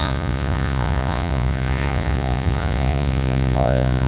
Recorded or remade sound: remade